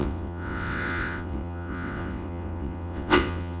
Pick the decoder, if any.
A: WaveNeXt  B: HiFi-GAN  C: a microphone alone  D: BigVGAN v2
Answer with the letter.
A